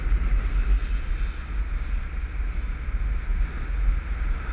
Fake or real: real